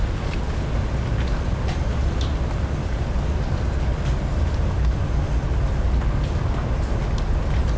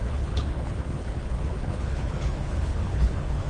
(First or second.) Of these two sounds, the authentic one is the first